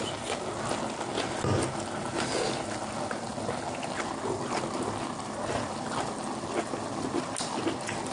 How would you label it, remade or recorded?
recorded